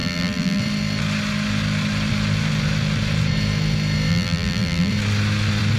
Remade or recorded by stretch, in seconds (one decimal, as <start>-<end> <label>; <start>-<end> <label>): 0.0-0.6 remade; 0.6-4.1 recorded; 4.1-4.9 remade; 4.9-5.8 recorded